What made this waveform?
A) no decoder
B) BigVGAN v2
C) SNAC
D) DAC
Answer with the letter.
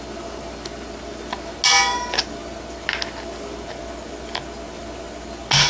A